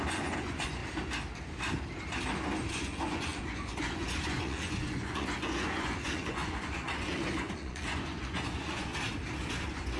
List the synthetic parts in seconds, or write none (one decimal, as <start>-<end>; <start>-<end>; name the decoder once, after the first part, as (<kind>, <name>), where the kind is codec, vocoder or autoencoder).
0.0-0.8 (vocoder, Vocos); 2.7-8.9; 9.5-10.0